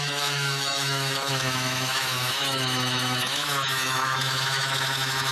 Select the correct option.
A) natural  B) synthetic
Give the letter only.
B